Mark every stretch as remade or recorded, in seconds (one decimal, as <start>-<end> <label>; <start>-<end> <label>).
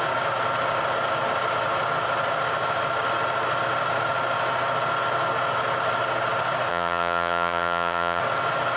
0.0-6.7 recorded; 6.7-8.2 remade; 8.2-8.8 recorded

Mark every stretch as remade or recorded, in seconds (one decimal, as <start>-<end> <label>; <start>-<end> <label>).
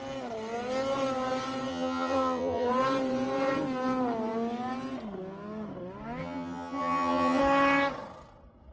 0.0-1.7 recorded; 1.7-2.7 remade; 2.7-6.2 recorded; 6.2-7.4 remade; 7.4-8.7 recorded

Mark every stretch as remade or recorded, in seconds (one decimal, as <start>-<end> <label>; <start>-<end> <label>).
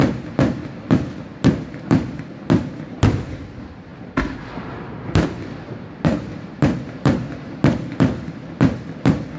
0.0-9.4 recorded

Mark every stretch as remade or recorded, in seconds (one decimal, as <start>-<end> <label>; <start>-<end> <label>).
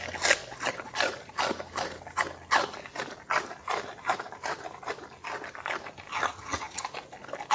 0.0-6.1 recorded; 6.1-6.8 remade; 6.8-7.5 recorded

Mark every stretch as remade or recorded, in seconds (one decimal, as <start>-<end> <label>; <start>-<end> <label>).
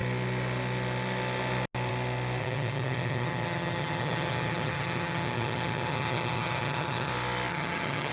0.0-2.4 recorded; 2.4-7.1 remade; 7.1-7.5 recorded; 7.5-8.1 remade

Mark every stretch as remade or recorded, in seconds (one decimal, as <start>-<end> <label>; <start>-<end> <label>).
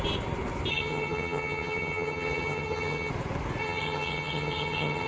0.0-0.7 recorded; 0.7-3.1 remade; 3.1-3.6 recorded; 3.6-5.1 remade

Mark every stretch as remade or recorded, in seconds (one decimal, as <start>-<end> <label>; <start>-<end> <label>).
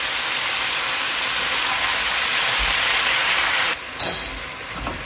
0.0-5.1 recorded